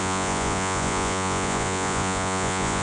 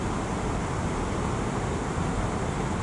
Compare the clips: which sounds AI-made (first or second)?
first